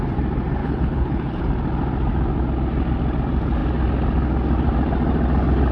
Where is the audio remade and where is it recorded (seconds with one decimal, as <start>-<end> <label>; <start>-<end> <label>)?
0.0-0.6 recorded; 0.6-1.4 remade; 1.4-5.7 recorded